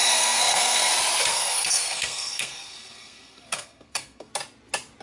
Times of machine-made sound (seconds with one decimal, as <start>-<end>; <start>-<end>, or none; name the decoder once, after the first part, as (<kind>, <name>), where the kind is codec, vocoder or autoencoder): 0.0-0.9 (codec, SNAC); 1.3-4.3